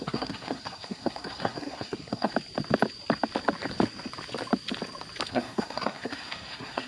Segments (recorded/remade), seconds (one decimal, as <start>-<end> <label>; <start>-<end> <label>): 0.0-2.3 remade; 2.3-5.3 recorded; 5.3-6.9 remade